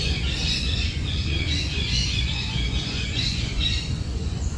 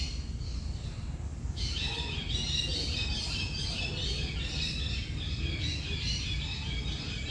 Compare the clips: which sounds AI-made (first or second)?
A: first